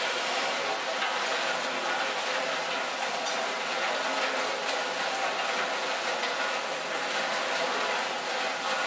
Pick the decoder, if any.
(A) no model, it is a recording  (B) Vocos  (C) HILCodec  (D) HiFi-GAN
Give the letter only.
A